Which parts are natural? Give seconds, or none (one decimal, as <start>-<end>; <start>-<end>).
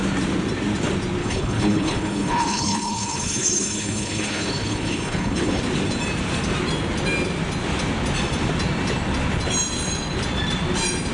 0.0-1.2; 5.6-11.1